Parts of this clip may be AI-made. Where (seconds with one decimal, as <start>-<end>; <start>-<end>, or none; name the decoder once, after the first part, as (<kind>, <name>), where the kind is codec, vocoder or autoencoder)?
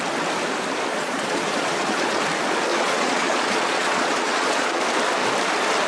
0.9-2.2 (vocoder, Vocos); 2.7-4.8